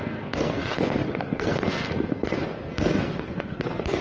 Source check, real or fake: fake